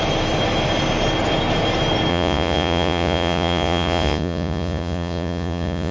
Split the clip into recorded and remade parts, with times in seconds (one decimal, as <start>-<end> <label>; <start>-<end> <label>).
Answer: 0.0-2.1 recorded; 2.1-5.9 remade